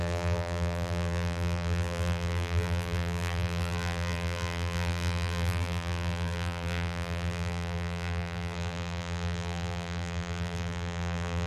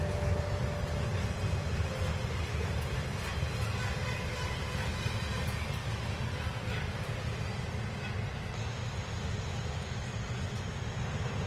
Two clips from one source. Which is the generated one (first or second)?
first